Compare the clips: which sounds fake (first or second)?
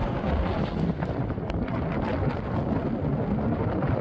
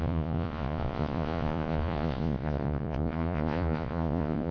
second